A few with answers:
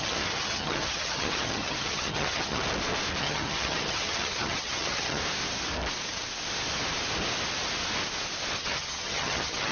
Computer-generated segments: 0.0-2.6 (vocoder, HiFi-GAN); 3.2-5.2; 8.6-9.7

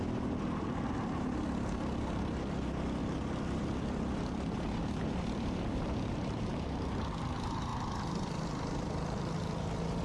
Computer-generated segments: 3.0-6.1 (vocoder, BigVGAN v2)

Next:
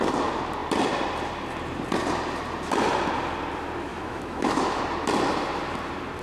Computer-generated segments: 3.9-4.8 (autoencoder, DAC-VAE)